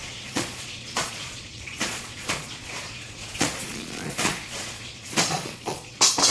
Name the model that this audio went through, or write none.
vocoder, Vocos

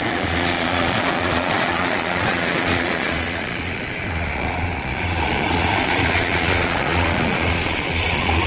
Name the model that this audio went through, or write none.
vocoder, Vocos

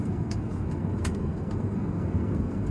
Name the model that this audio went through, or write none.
codec, SNAC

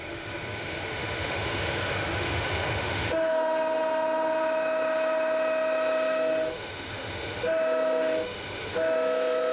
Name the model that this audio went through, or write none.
autoencoder, DAC-VAE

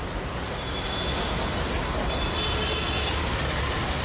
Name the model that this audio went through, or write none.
none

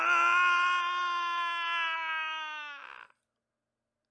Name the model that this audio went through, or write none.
none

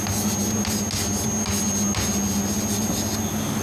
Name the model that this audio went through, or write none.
none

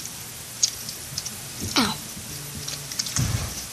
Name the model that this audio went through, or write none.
vocoder, BigVGAN v2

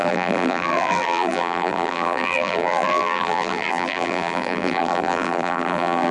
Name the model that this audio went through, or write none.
vocoder, BigVGAN v2